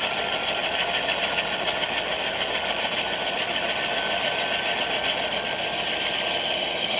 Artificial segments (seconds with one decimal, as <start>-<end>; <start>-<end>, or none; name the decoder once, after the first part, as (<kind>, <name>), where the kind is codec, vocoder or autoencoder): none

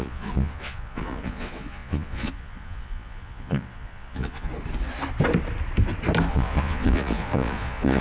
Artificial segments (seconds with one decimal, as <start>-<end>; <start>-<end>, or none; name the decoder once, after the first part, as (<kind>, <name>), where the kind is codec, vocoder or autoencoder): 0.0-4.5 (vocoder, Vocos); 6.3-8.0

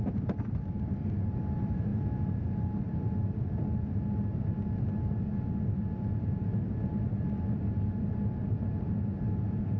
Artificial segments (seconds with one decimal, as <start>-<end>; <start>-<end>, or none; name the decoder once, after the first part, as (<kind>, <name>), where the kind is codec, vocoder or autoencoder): none

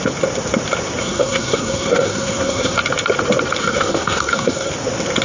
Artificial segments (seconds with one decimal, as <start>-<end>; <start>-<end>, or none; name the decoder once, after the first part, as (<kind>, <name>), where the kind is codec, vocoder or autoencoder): 1.0-2.8 (codec, SNAC); 3.6-4.7